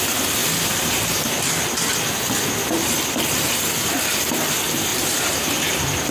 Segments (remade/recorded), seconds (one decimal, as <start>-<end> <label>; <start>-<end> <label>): 0.0-4.9 recorded; 4.9-6.1 remade